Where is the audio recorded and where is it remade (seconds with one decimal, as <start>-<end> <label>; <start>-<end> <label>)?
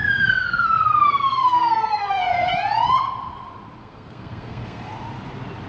0.0-2.5 remade; 2.5-3.8 recorded; 3.8-4.9 remade; 4.9-5.7 recorded